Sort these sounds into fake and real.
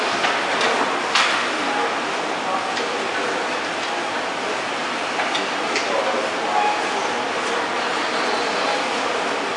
real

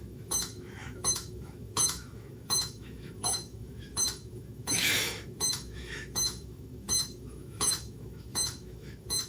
fake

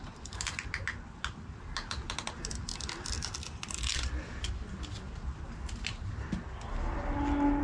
real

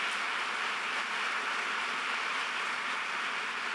real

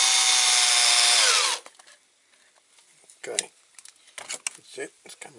real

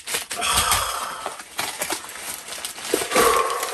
real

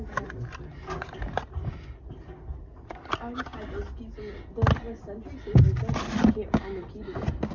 real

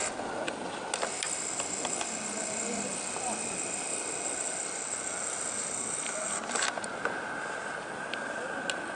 real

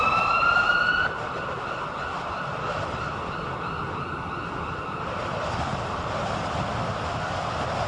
real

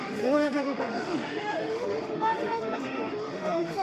fake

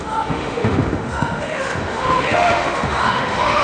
fake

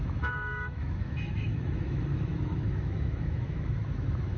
fake